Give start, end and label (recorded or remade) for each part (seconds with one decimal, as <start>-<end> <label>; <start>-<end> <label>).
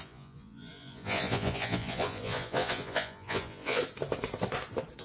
0.0-3.8 remade; 3.8-5.0 recorded